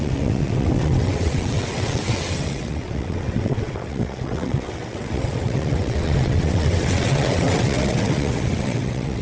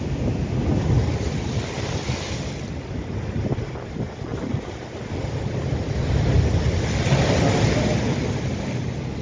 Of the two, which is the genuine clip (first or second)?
second